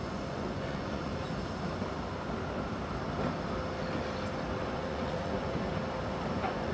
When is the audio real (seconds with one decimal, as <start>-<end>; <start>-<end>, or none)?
1.1-4.6; 5.7-6.3